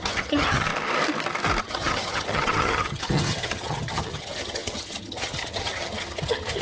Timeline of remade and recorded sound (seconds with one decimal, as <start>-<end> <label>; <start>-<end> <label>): 0.0-0.7 remade; 0.7-1.6 recorded; 1.6-6.6 remade